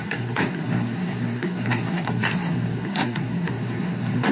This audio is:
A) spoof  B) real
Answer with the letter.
A